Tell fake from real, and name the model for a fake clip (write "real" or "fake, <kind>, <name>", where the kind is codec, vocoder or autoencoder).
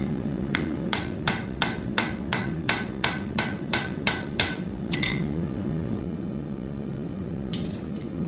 fake, vocoder, WaveNeXt